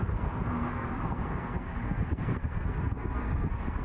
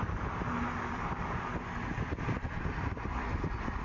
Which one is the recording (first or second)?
second